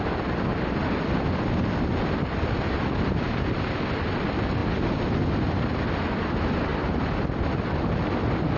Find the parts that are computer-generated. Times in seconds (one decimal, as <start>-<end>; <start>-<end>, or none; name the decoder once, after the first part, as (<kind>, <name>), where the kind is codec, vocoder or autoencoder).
none